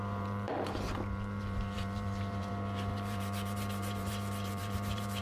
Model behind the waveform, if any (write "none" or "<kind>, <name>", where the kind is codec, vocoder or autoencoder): vocoder, BigVGAN v2